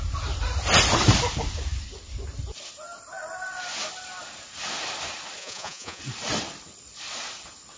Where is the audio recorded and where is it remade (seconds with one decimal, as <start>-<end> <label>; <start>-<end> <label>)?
0.0-5.4 recorded; 5.4-6.0 remade; 6.0-7.8 recorded